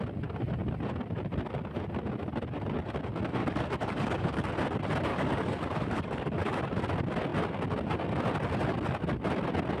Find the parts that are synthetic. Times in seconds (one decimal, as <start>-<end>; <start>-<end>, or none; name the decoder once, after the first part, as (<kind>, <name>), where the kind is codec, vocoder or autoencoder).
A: 3.4-4.5 (codec, DAC); 5.1-6.6